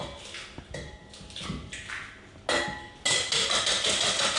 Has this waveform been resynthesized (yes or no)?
no